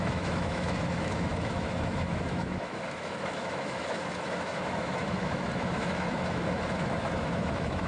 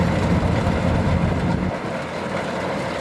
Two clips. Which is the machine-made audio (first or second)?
first